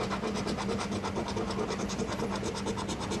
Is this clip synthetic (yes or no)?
no